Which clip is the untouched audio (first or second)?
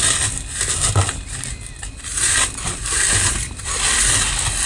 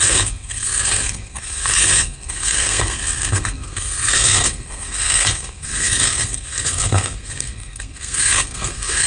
first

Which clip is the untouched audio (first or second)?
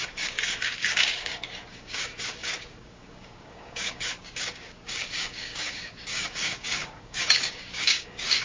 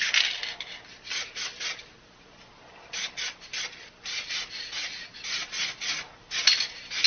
second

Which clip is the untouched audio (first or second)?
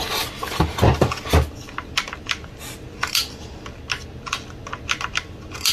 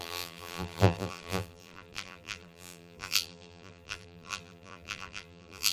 first